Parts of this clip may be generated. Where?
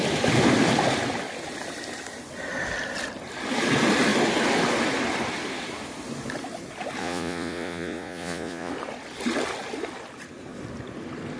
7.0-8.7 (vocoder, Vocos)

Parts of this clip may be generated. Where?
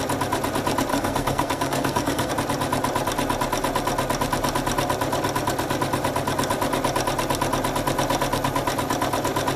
0.9-2.3 (codec, SNAC)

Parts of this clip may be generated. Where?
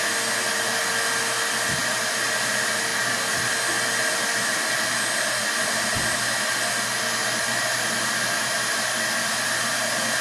none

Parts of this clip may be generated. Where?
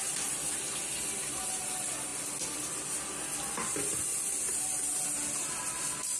none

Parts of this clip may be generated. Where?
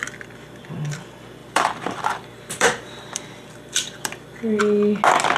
1.4-4.6 (vocoder, BigVGAN v2)